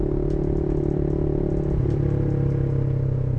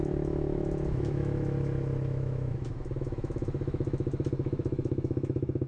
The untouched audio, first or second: first